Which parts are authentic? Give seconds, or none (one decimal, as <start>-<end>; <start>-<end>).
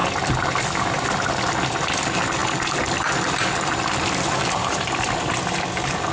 0.6-2.4; 4.9-6.1